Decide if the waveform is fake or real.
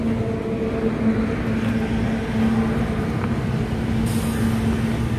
real